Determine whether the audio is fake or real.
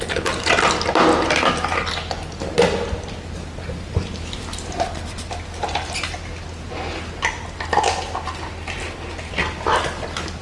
real